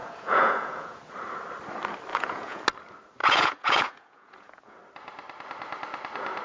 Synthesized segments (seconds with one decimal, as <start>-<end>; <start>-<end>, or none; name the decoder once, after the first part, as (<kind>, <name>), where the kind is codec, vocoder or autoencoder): 0.0-1.0 (vocoder, Vocos); 2.1-2.6; 3.2-4.8